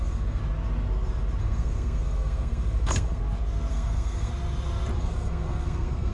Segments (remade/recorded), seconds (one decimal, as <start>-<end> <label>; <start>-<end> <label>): 0.0-0.4 remade; 0.4-1.4 recorded; 1.4-3.2 remade; 3.2-3.7 recorded; 3.7-4.3 remade; 4.3-5.0 recorded; 5.0-6.1 remade